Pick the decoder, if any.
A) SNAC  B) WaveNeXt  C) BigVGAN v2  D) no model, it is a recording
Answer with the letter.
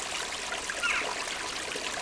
D